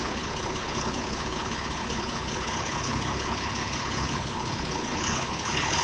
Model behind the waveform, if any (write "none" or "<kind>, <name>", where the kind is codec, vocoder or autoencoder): codec, HILCodec